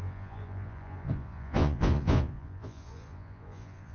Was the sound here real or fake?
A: fake